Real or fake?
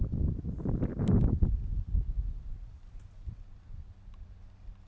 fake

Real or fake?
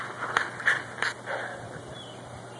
real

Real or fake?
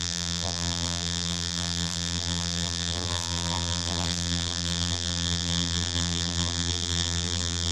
fake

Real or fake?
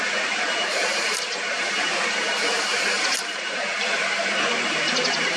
fake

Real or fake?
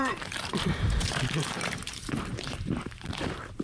fake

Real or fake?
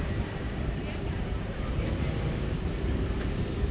fake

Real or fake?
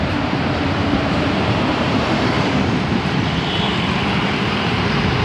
fake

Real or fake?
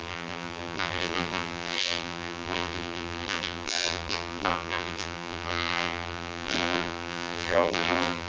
fake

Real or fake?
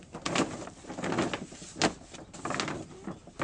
real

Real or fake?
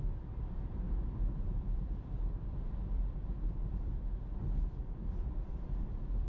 fake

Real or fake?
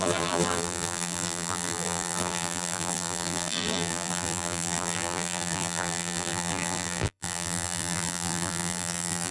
fake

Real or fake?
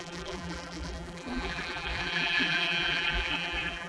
fake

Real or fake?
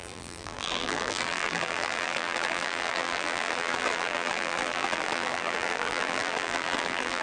fake